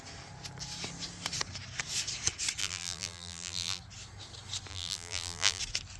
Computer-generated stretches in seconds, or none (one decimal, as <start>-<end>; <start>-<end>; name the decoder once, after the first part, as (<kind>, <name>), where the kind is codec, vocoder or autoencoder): 2.6-3.8 (vocoder, BigVGAN v2); 4.7-5.6